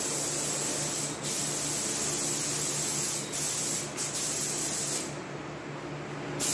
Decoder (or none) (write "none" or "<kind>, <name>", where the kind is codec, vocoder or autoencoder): none